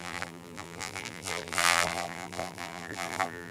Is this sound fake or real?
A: fake